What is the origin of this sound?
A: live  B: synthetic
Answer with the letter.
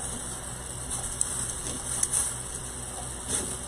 B